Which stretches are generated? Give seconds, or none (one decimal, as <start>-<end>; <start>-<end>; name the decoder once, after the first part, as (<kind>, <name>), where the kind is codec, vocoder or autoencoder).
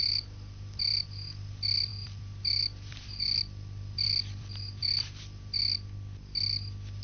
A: 1.9-5.2 (vocoder, BigVGAN v2)